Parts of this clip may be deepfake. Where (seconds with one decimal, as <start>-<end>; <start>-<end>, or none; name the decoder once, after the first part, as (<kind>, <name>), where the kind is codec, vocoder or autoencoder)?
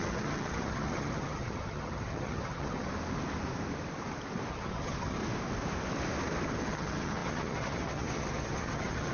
0.0-2.9 (vocoder, HiFi-GAN); 4.5-5.2; 6.6-9.1